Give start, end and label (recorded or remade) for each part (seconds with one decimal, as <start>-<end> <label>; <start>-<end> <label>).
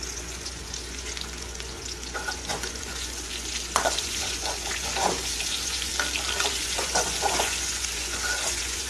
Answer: 0.0-5.9 remade; 5.9-6.5 recorded; 6.5-8.9 remade